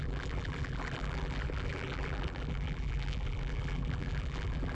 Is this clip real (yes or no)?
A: no